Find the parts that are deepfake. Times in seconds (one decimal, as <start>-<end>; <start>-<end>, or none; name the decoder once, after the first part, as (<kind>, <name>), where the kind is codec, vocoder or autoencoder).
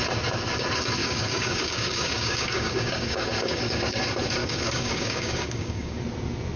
1.0-4.0 (codec, DAC); 4.4-6.0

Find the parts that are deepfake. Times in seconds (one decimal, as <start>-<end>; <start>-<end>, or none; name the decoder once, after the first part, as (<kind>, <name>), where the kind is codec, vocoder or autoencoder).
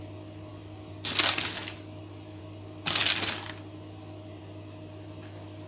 none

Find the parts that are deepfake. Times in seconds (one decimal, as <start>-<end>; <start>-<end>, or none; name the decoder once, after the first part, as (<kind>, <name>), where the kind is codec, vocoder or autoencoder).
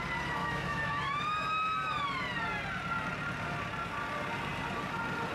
0.4-1.2 (autoencoder, DAC-VAE)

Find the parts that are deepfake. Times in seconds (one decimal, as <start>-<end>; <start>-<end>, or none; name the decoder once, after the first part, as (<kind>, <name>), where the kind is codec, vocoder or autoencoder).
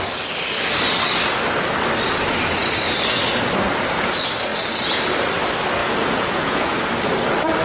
5.8-6.8 (vocoder, Vocos)